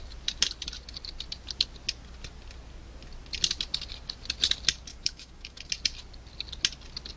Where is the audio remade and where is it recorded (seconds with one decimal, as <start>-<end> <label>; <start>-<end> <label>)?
0.0-4.9 recorded; 4.9-5.7 remade; 5.7-7.2 recorded